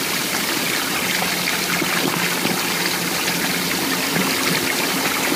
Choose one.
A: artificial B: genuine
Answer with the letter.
B